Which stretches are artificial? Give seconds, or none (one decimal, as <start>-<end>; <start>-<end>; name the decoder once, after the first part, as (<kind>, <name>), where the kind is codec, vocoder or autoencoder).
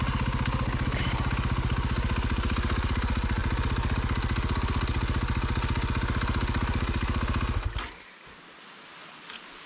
none